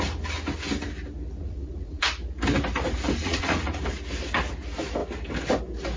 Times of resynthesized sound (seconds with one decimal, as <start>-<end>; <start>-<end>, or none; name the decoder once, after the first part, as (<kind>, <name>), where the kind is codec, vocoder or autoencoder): 1.4-2.0 (vocoder, Vocos); 3.2-3.8